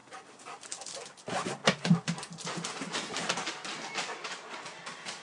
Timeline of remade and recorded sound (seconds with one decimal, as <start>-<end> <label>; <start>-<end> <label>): 0.0-5.2 recorded